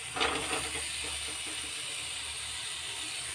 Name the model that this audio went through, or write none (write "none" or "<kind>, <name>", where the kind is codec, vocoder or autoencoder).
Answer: none